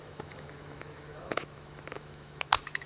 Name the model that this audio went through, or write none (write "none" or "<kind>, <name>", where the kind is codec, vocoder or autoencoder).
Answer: autoencoder, DAC-VAE